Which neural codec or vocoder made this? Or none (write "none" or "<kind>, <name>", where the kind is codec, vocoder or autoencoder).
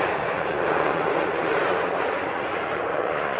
vocoder, Vocos